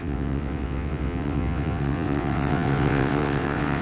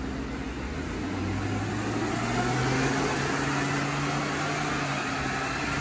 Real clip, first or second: second